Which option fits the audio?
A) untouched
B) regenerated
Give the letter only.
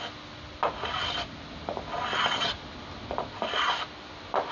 A